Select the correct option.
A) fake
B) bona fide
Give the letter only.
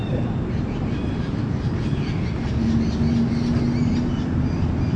B